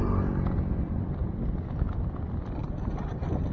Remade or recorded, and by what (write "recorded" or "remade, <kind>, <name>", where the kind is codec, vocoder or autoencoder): recorded